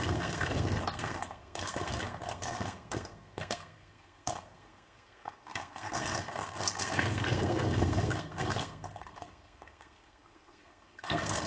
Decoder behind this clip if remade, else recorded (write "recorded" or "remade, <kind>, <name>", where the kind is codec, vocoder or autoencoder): remade, codec, SNAC